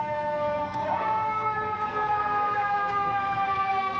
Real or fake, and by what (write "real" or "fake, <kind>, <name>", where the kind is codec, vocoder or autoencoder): fake, codec, SNAC